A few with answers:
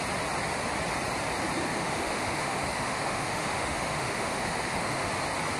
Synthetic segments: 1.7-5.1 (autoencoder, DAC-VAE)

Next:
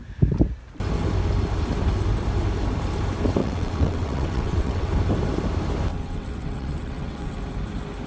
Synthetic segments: 3.4-4.9 (vocoder, WaveNeXt); 5.9-7.4

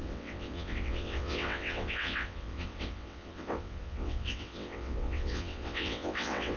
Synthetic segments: 0.0-6.6 (vocoder, WaveNeXt)

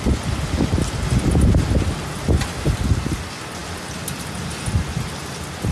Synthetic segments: none